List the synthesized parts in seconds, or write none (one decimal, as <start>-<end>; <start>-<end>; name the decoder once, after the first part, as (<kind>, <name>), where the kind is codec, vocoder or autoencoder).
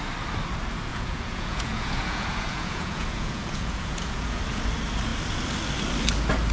0.9-4.4 (vocoder, Vocos)